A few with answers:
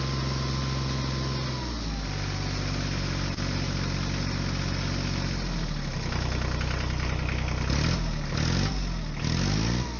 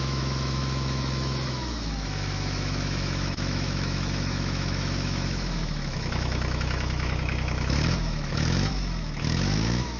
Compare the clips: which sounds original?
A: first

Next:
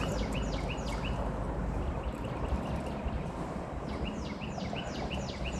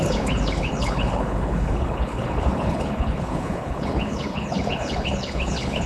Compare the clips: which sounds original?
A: first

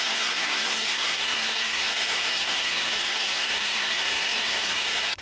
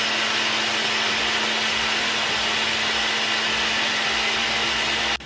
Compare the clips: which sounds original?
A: second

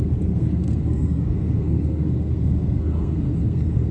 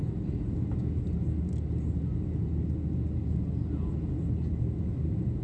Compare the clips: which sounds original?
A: second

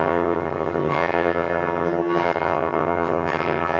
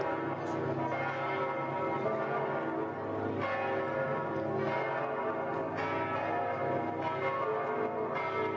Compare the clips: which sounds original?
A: second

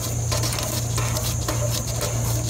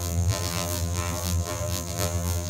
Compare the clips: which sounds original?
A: first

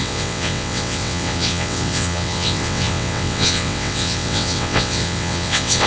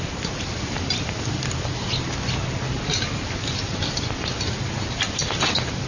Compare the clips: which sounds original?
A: second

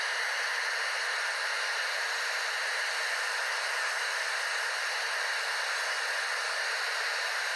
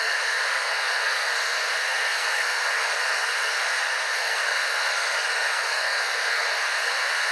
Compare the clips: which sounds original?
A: first